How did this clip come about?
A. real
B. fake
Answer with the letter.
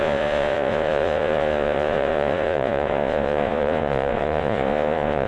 B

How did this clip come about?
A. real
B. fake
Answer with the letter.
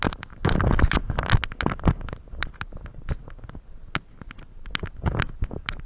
A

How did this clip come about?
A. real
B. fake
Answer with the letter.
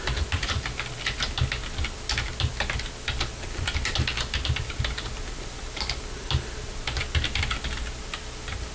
A